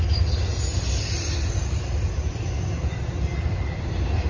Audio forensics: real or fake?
real